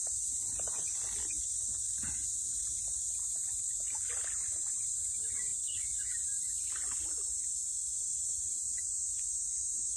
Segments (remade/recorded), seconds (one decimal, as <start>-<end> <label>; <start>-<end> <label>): 0.0-8.1 recorded; 8.1-8.9 remade; 8.9-10.0 recorded